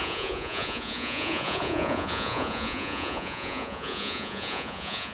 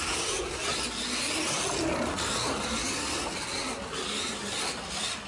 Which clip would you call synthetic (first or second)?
first